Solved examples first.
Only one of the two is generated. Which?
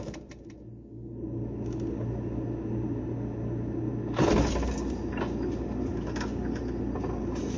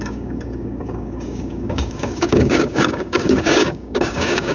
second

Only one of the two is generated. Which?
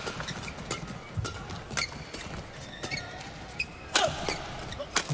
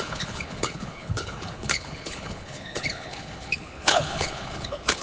second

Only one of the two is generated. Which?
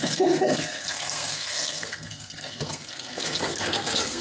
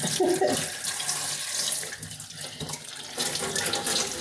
first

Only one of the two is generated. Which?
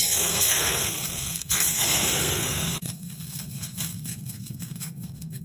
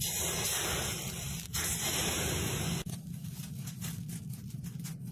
first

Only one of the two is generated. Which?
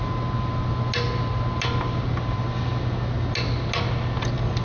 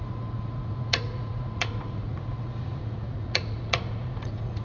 second